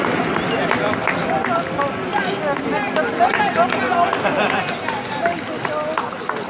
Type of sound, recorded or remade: recorded